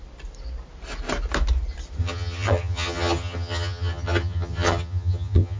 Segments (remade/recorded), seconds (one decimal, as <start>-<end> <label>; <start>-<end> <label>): 0.0-2.0 recorded; 2.0-5.6 remade